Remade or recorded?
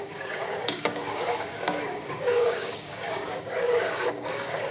remade